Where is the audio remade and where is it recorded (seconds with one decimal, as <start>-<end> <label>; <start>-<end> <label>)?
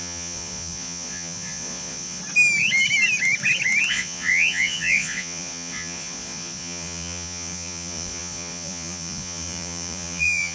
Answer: 0.0-2.2 remade; 2.2-3.9 recorded; 3.9-10.5 remade